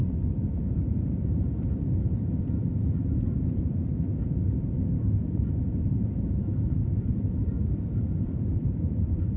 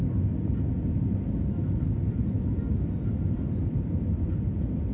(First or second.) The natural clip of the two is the second